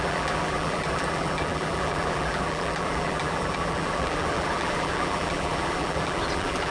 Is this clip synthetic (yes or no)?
yes